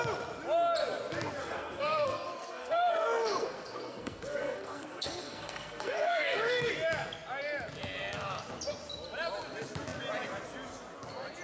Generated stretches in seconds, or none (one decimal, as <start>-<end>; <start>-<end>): 1.4-6.7